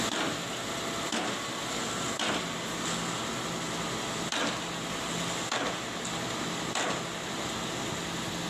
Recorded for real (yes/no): yes